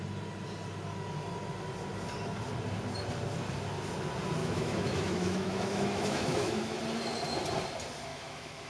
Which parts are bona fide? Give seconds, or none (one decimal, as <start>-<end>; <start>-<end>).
0.0-4.4; 6.8-8.1